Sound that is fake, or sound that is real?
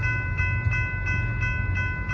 real